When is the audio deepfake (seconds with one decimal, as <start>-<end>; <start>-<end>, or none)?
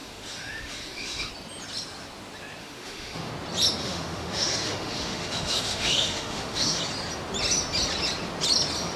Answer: 0.0-1.3; 2.6-3.3; 3.8-6.8